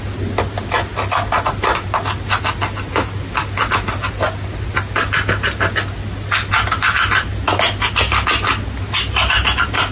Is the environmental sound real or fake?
real